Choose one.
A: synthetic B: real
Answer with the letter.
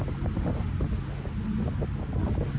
B